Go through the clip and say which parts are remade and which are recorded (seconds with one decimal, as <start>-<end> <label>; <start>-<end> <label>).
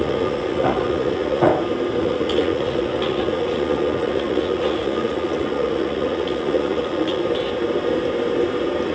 0.0-1.5 remade; 1.5-2.0 recorded; 2.0-7.2 remade; 7.2-8.9 recorded